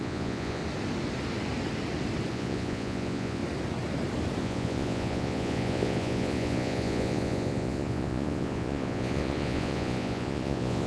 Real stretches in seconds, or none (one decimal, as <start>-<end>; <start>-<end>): 0.6-2.3; 3.4-4.4